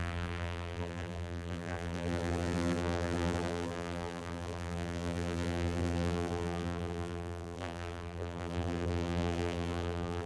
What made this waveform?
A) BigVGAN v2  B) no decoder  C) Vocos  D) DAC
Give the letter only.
A